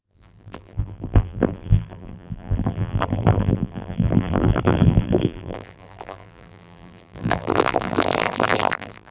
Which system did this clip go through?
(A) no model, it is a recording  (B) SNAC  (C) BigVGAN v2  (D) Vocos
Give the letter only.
C